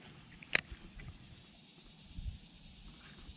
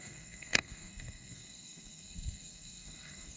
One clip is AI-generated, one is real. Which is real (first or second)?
first